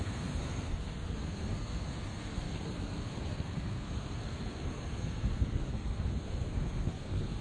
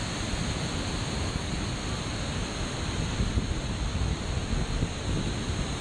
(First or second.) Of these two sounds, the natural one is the second